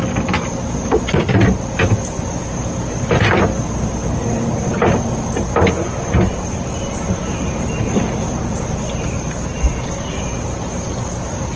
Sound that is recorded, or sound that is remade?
recorded